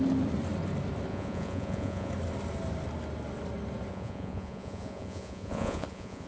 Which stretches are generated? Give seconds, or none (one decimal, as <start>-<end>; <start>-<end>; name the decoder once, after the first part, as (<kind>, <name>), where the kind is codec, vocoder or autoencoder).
1.1-2.1 (vocoder, Vocos); 3.9-6.3